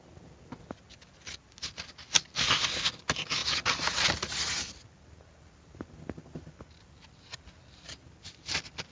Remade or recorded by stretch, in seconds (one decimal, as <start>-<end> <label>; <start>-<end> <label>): 0.0-8.9 recorded